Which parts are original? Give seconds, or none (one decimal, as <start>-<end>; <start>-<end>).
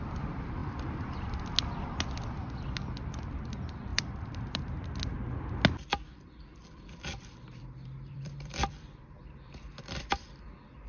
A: 0.0-0.6; 1.4-3.9; 4.6-5.9